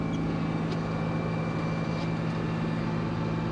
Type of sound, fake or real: real